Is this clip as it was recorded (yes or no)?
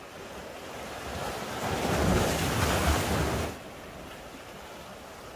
yes